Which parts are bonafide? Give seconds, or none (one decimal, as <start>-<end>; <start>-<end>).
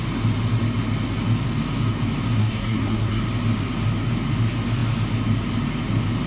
0.0-2.4; 3.2-6.3